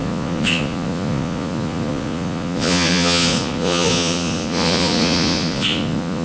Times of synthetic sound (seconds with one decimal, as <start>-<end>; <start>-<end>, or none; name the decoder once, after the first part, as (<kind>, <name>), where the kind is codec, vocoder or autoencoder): 0.0-6.2 (vocoder, Vocos)